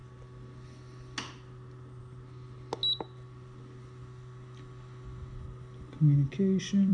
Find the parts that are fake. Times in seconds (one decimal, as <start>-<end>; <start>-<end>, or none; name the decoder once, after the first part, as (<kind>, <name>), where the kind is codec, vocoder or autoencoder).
none